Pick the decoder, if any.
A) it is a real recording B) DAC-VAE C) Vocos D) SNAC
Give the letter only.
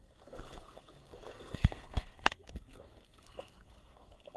D